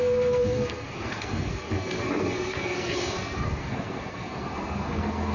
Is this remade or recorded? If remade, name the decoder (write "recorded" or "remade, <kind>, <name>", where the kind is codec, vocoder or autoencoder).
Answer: remade, codec, SNAC